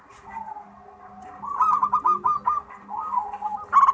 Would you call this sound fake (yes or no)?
no